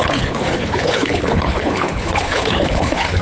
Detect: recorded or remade remade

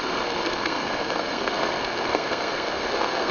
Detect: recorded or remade remade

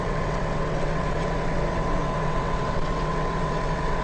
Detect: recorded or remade remade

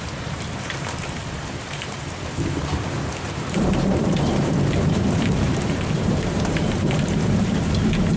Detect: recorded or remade remade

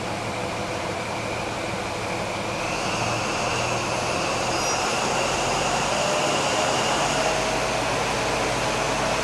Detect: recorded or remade recorded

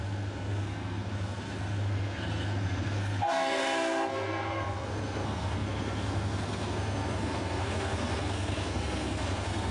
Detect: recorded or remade remade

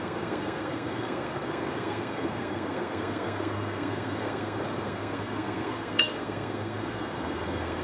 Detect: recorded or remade remade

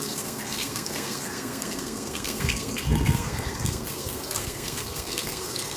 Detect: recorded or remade remade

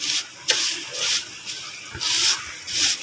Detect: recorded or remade recorded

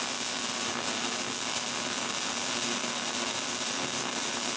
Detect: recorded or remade recorded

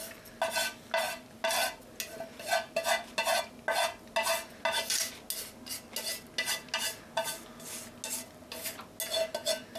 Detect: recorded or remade recorded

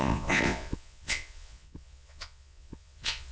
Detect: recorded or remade remade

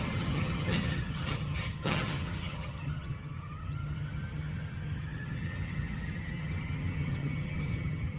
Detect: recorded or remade remade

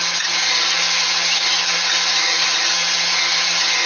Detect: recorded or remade remade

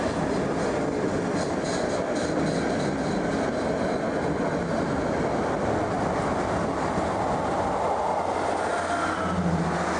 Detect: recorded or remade recorded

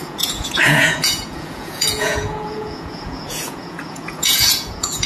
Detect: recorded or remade remade